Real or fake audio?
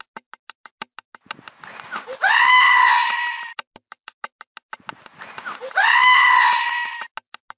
real